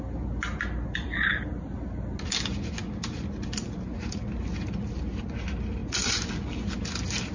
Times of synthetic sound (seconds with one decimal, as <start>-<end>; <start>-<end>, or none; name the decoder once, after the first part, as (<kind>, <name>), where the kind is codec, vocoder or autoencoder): none